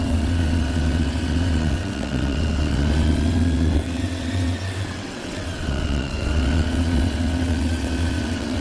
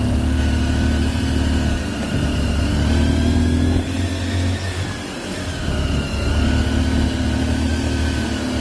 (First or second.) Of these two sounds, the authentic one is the second